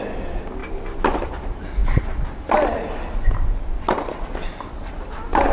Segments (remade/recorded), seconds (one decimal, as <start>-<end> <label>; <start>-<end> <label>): 0.0-5.5 recorded